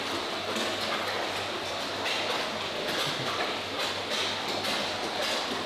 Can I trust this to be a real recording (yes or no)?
yes